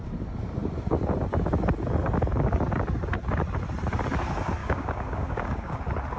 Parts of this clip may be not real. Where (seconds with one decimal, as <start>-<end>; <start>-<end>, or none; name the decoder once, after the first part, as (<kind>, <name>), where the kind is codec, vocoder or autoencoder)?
4.6-5.8 (codec, DAC)